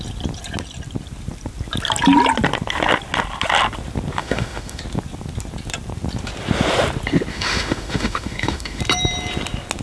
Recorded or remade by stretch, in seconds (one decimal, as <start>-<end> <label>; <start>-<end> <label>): 0.0-4.2 recorded; 4.2-4.8 remade; 4.8-7.3 recorded; 7.3-8.8 remade; 8.8-9.8 recorded